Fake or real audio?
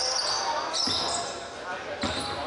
real